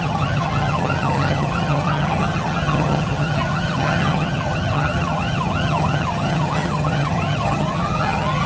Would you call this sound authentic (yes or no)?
no